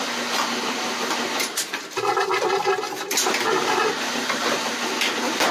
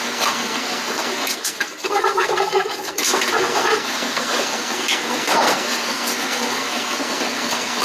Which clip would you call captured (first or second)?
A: first